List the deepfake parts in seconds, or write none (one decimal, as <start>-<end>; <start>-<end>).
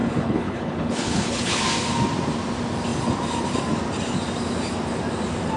0.0-1.6